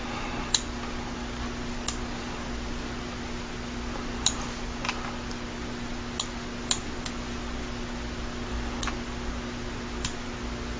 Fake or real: real